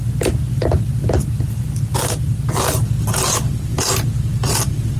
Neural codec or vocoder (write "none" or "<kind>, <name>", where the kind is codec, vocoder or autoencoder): none